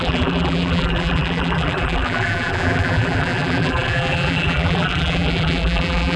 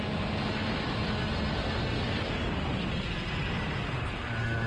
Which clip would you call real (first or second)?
second